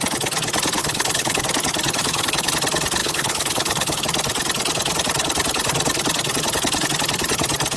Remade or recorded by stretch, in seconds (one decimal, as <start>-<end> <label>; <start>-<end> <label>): 0.0-0.8 recorded; 0.8-1.4 remade; 1.4-2.0 recorded; 2.0-2.5 remade; 2.5-3.0 recorded; 3.0-4.0 remade; 4.0-7.8 recorded